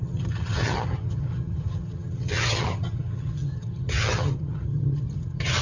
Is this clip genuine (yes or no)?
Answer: no